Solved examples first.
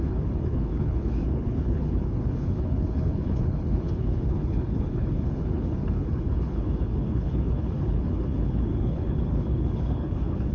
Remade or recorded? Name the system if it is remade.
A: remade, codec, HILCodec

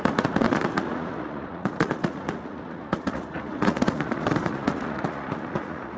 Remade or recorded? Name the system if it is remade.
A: remade, vocoder, Vocos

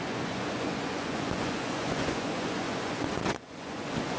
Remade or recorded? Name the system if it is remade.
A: remade, vocoder, Vocos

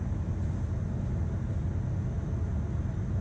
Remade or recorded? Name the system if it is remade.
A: recorded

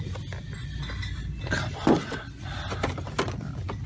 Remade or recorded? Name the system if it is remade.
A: recorded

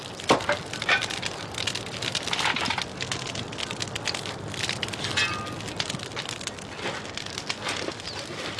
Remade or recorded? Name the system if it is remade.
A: recorded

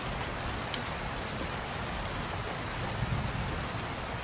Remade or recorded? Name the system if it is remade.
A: recorded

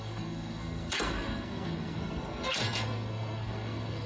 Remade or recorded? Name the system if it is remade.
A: remade, codec, SNAC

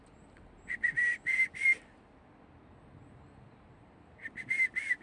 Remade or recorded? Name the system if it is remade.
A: recorded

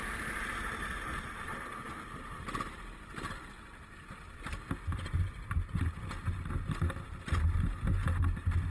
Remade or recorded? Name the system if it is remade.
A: recorded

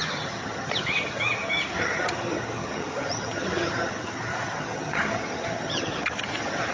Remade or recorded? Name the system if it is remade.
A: remade, vocoder, HiFi-GAN